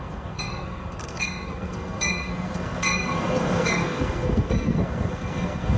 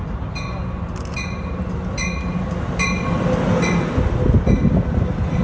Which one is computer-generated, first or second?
first